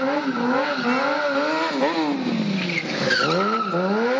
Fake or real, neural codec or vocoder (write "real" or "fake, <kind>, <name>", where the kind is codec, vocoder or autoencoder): real